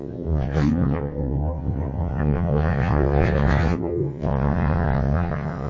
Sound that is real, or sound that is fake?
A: fake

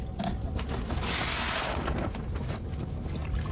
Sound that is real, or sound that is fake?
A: real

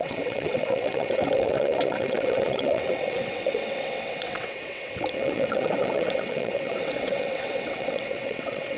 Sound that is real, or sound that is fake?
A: fake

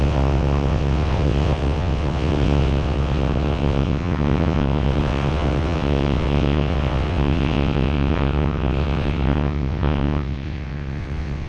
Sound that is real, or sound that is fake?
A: fake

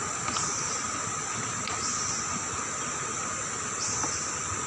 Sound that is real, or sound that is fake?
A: real